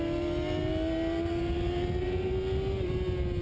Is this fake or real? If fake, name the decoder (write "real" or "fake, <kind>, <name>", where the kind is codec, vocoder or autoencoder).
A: real